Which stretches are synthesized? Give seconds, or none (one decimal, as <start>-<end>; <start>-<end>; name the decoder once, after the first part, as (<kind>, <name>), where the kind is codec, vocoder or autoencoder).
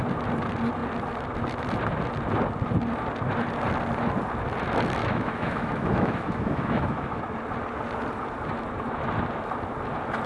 5.0-7.2 (autoencoder, DAC-VAE)